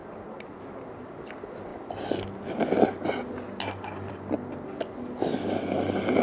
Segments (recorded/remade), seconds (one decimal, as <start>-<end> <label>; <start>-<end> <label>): 0.0-6.2 recorded